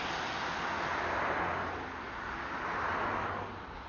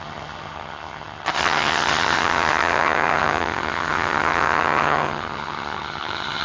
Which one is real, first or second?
first